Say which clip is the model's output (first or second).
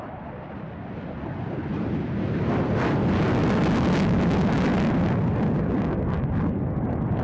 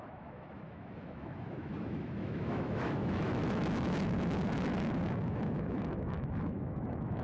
second